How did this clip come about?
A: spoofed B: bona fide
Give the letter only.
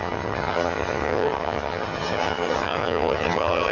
A